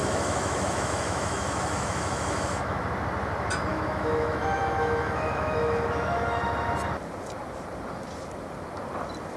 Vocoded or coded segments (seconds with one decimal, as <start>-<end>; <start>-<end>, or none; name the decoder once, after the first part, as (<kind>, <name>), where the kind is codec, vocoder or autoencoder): 0.0-2.8 (autoencoder, DAC-VAE); 3.7-6.4